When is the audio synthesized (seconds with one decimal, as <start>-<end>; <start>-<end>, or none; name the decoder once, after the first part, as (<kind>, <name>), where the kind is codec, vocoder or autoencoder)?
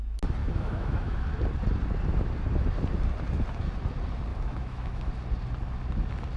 0.4-1.3 (autoencoder, DAC-VAE); 4.3-5.1